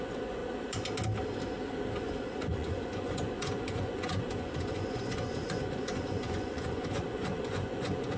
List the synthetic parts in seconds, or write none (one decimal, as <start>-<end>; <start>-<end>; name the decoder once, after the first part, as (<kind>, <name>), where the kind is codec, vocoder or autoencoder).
0.0-0.4 (vocoder, Vocos); 2.0-8.2